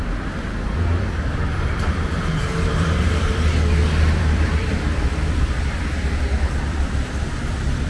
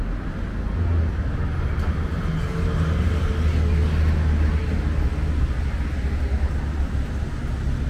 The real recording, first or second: second